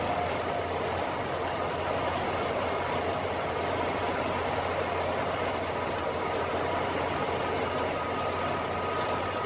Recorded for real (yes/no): yes